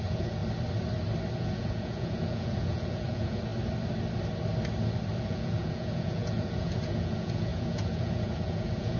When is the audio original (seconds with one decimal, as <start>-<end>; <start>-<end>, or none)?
0.4-1.4; 3.5-5.2